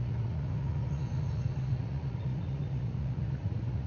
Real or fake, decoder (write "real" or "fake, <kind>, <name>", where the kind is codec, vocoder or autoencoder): fake, vocoder, Vocos